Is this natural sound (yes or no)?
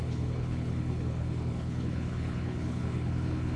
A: no